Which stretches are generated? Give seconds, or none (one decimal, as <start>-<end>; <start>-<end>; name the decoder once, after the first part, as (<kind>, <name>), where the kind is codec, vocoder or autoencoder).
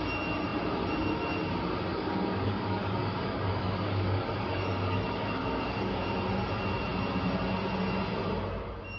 1.9-6.0 (codec, DAC)